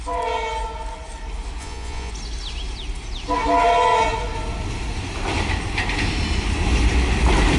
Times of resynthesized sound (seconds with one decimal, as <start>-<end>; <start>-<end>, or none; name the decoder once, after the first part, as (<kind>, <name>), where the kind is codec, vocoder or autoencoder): 1.6-2.1 (vocoder, Vocos)